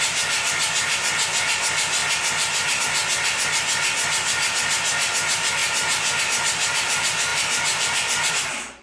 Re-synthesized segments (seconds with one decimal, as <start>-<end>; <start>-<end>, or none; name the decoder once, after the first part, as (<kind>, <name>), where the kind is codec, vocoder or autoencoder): none